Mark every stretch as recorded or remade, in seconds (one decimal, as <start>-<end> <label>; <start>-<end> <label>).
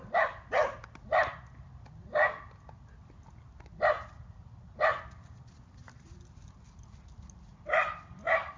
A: 0.0-8.6 recorded